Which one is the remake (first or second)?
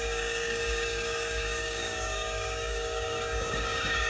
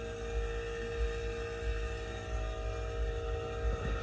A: first